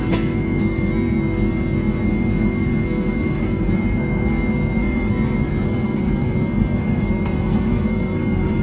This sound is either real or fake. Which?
fake